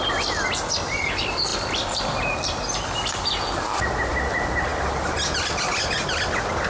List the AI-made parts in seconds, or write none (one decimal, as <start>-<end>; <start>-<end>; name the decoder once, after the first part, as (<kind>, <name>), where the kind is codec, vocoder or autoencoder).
1.5-3.9 (vocoder, BigVGAN v2)